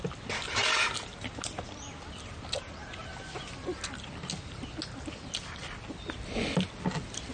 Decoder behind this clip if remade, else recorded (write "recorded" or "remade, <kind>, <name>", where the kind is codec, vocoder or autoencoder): recorded